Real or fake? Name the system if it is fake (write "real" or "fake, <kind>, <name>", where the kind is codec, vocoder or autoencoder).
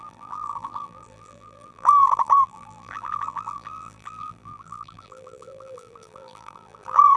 fake, vocoder, BigVGAN v2